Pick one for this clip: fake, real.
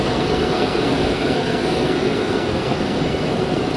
fake